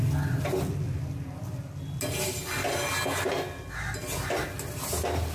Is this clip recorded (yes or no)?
yes